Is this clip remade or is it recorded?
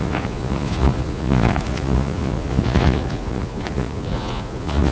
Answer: remade